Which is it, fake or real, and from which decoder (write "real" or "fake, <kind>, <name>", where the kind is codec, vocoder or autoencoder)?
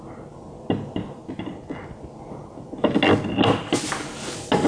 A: real